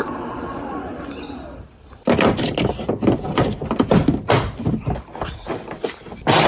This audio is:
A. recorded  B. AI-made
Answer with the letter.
A